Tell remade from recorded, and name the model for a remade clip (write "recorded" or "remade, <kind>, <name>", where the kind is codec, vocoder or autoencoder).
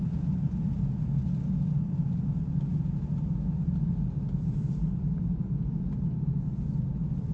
recorded